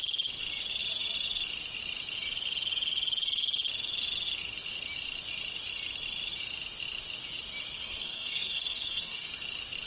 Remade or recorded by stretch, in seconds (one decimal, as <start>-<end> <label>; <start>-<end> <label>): 0.0-7.8 recorded; 7.8-9.3 remade; 9.3-9.9 recorded